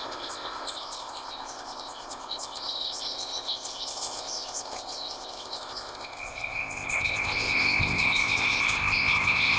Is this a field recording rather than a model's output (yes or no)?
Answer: no